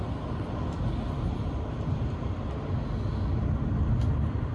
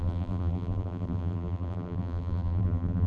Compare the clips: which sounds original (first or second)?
first